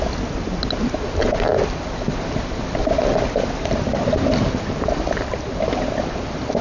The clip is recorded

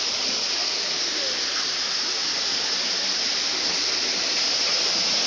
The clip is recorded